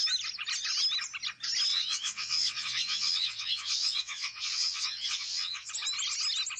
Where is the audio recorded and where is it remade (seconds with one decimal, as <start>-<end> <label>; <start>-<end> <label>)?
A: 0.0-1.7 recorded; 1.7-5.7 remade; 5.7-6.6 recorded